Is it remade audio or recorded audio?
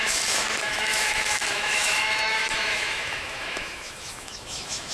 remade